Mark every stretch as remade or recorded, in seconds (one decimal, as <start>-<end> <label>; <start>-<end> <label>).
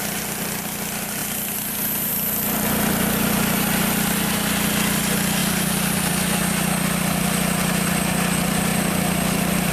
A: 0.0-9.7 recorded